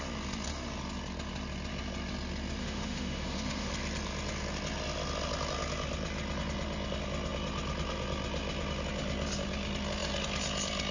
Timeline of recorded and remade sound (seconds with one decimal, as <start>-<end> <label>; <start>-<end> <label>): 0.0-2.6 recorded; 2.6-3.7 remade; 3.7-10.9 recorded